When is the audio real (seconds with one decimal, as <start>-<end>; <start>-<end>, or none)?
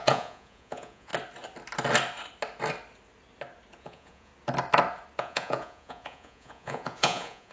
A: 1.1-3.8; 4.3-5.2